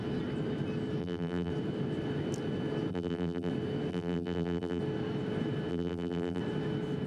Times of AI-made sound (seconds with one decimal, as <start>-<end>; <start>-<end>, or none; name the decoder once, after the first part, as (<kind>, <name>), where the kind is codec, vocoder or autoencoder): 1.0-1.5 (vocoder, BigVGAN v2); 2.9-3.5; 3.9-4.8; 5.7-6.4